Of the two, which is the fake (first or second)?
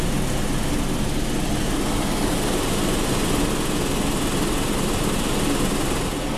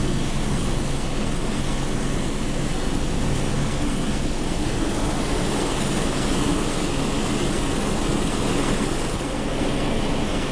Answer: second